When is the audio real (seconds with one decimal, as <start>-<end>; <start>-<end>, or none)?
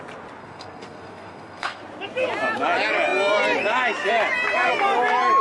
0.0-0.4; 1.8-5.4